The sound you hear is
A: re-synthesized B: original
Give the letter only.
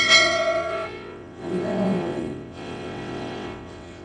A